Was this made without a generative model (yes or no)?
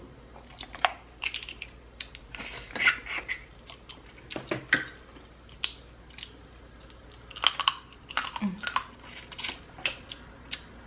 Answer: yes